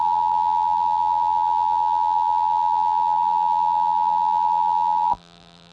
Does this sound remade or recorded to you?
remade